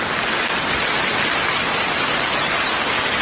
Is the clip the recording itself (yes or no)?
yes